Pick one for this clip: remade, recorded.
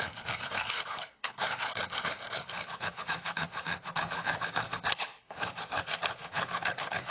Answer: remade